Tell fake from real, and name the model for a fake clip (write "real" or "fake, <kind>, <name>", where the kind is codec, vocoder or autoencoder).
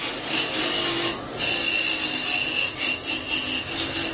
real